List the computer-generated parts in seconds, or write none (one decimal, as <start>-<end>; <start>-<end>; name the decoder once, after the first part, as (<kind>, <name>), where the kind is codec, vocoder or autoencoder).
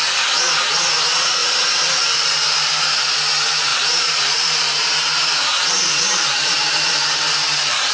1.4-2.7 (vocoder, BigVGAN v2); 3.7-7.9